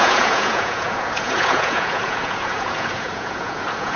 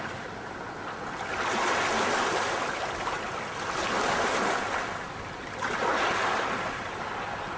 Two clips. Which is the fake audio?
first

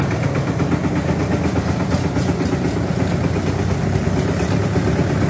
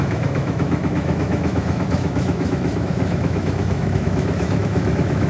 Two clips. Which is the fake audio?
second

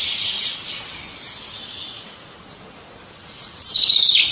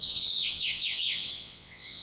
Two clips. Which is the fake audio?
second